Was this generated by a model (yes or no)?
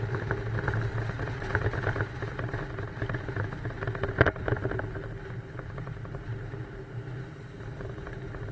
no